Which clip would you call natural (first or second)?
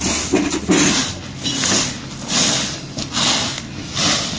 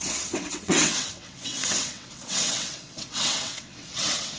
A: first